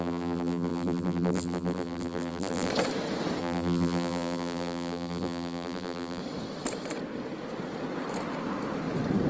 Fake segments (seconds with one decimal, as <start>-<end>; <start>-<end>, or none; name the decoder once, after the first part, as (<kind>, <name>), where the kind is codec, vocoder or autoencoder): 0.0-2.7 (vocoder, BigVGAN v2); 3.4-6.2